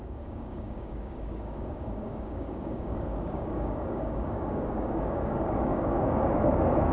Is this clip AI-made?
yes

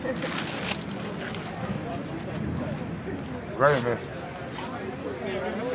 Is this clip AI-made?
no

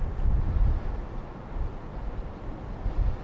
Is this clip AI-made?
no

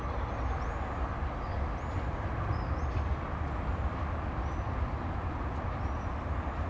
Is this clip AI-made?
no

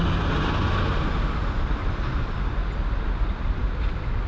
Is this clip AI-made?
no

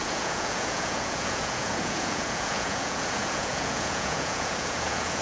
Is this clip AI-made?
yes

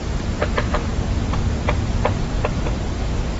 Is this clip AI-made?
no